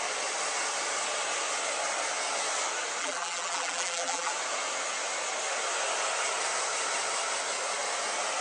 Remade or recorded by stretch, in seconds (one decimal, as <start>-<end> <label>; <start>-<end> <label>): 0.0-3.0 recorded; 3.0-4.3 remade; 4.3-8.4 recorded